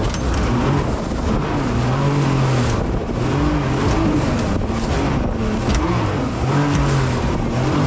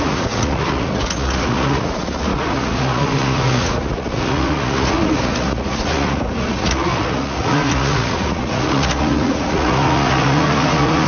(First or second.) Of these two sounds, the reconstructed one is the second